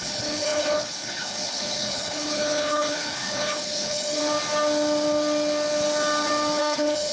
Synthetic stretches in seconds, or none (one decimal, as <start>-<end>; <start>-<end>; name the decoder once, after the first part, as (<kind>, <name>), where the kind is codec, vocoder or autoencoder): 0.0-4.2 (codec, HILCodec); 6.6-7.1